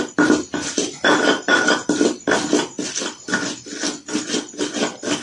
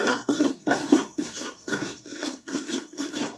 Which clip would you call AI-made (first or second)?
second